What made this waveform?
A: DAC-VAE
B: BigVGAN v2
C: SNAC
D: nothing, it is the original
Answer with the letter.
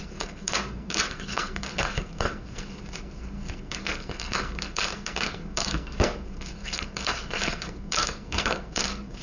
C